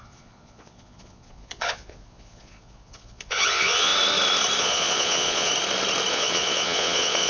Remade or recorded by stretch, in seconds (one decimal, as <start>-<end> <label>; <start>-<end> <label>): 0.0-3.9 remade; 3.9-4.6 recorded; 4.6-5.5 remade; 5.5-6.1 recorded; 6.1-7.3 remade